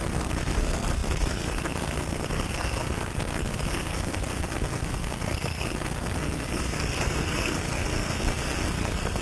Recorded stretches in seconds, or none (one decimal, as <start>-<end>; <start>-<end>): none